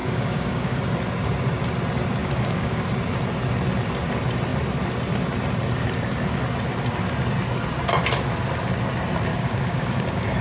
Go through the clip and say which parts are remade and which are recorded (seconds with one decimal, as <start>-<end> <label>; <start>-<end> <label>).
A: 0.0-0.8 remade; 0.8-2.2 recorded; 2.2-2.8 remade; 2.8-9.3 recorded; 9.3-10.4 remade